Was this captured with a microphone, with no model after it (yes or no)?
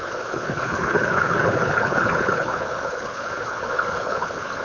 no